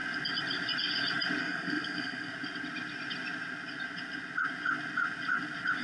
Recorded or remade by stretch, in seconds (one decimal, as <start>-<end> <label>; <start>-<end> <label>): 0.0-1.4 recorded; 1.4-2.3 remade; 2.3-5.8 recorded